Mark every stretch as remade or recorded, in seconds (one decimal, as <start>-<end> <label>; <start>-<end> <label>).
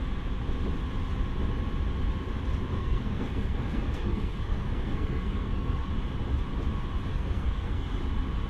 0.0-2.7 recorded; 2.7-5.9 remade; 5.9-7.1 recorded; 7.1-8.0 remade; 8.0-8.5 recorded